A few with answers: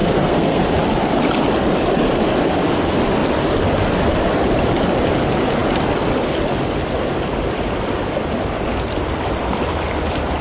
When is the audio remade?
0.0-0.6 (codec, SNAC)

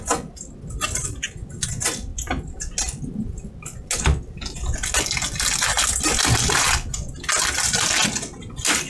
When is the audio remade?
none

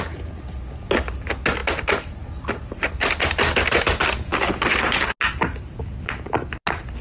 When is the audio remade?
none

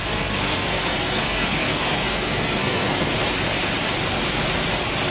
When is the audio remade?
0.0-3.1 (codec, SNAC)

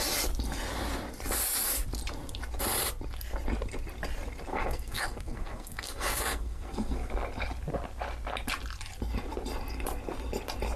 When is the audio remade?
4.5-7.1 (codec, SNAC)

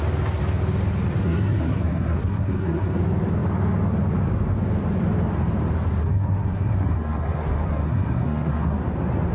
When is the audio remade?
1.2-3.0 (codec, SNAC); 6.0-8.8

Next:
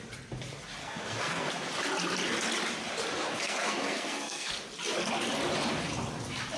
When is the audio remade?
0.8-1.5 (codec, SNAC); 3.3-4.5

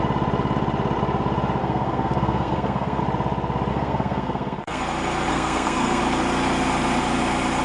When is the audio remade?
1.6-3.0 (codec, SNAC); 3.7-4.8; 5.3-6.0